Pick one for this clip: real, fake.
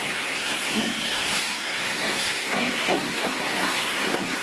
fake